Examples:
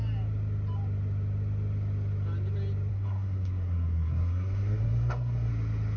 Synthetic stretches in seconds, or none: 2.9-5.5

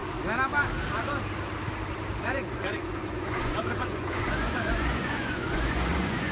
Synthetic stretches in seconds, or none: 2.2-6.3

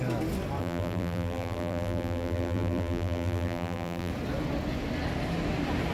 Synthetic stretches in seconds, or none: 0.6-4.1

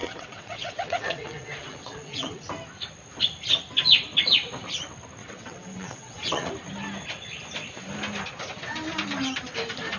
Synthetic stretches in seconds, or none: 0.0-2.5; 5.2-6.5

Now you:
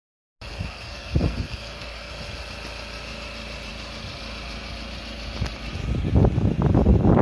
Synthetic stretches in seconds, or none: 0.5-2.1

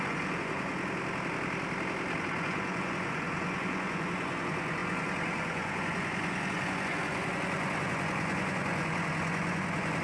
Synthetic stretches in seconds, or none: 0.0-0.7; 2.2-10.0

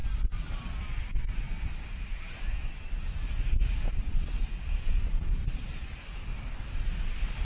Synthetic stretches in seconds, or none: none